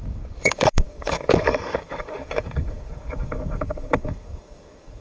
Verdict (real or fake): fake